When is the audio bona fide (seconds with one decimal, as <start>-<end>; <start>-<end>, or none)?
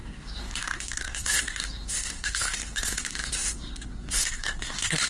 none